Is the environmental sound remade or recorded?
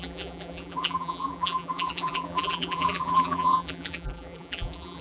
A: remade